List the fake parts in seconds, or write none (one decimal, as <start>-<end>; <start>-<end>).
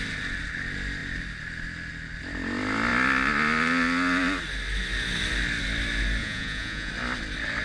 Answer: 6.2-6.9